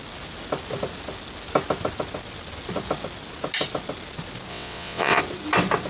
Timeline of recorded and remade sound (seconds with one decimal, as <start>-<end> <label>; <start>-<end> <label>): 0.0-4.5 recorded; 4.5-5.2 remade; 5.2-5.9 recorded

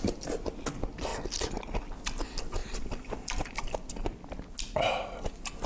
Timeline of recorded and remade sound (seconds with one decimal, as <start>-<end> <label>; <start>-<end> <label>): 0.0-2.6 recorded; 2.6-3.9 remade; 3.9-5.7 recorded

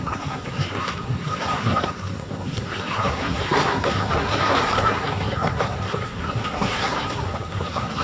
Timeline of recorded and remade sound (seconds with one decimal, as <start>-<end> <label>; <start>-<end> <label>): 0.0-8.0 remade

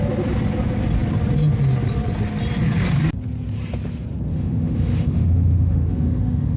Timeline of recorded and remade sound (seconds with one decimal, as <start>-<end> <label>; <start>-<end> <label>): 0.0-4.3 recorded; 4.3-6.6 remade

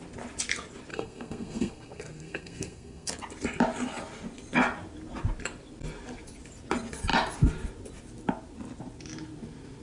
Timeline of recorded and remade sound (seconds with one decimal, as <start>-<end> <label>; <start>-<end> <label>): 0.0-0.9 recorded; 0.9-3.1 remade; 3.1-9.8 recorded